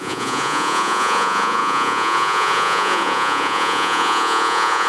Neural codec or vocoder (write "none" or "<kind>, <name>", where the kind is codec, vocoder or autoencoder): vocoder, Vocos